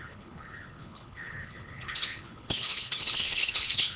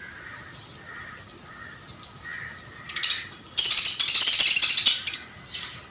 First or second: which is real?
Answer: second